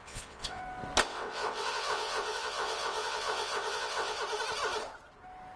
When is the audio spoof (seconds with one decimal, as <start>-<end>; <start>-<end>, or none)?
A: 0.0-0.6; 1.1-4.2